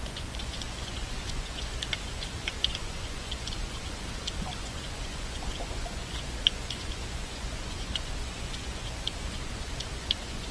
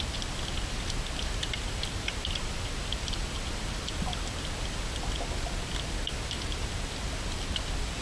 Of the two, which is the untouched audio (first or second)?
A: second